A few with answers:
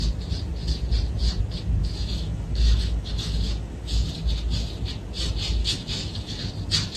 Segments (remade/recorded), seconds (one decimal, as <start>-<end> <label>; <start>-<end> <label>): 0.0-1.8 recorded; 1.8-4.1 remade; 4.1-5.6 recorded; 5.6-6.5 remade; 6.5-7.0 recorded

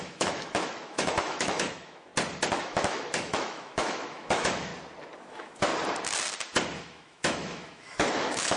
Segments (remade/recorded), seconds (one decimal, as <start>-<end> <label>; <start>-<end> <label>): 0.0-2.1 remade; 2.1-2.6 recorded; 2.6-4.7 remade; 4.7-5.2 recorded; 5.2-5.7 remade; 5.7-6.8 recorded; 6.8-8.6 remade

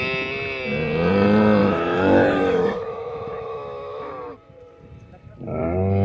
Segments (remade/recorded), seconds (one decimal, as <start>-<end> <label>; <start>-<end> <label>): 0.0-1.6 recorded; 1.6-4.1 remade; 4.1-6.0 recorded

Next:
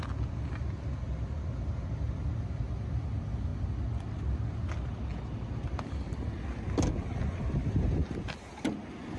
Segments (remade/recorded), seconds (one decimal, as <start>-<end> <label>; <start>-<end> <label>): 0.0-9.2 recorded

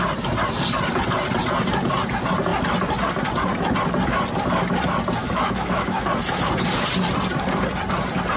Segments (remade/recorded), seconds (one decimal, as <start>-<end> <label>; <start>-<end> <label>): 0.0-5.2 recorded; 5.2-6.1 remade; 6.1-8.4 recorded